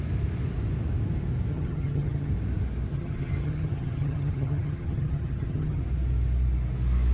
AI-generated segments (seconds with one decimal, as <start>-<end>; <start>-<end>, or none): 1.5-2.3; 2.9-5.8